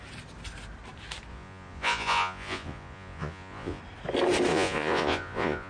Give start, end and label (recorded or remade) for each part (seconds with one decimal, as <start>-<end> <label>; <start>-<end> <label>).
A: 0.0-1.3 recorded; 1.3-3.8 remade; 3.8-4.5 recorded; 4.5-5.7 remade